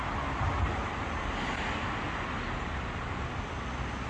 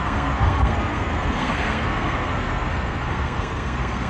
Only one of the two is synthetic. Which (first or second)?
second